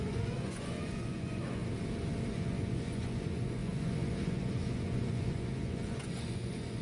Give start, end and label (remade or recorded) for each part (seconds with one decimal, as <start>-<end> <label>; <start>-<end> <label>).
0.0-1.6 remade; 1.6-2.3 recorded; 2.3-6.8 remade